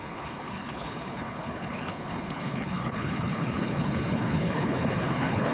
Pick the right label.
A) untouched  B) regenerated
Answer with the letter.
B